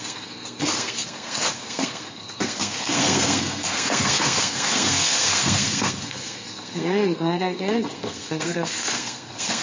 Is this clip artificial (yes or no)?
yes